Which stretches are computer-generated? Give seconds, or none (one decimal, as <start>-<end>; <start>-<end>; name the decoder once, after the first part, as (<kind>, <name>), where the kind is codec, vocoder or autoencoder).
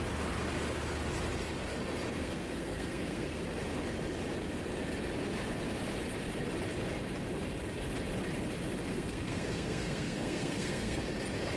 2.2-3.4 (codec, SNAC); 8.9-11.0